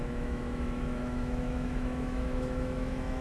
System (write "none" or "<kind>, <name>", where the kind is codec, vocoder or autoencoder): autoencoder, DAC-VAE